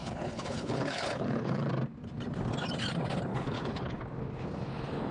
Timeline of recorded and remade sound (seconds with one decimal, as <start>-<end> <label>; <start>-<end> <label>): 0.0-1.7 remade; 1.7-3.3 recorded; 3.3-4.0 remade; 4.0-5.1 recorded